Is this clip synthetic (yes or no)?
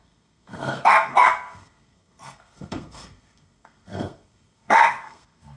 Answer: yes